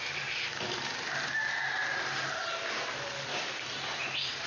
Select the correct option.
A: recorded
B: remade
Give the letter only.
A